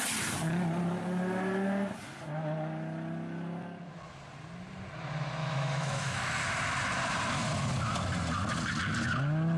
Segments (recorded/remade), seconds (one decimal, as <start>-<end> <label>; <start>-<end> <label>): 0.0-5.4 recorded; 5.4-6.3 remade; 6.3-9.6 recorded